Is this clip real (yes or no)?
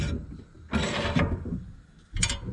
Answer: yes